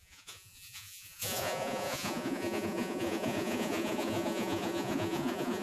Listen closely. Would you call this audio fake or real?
fake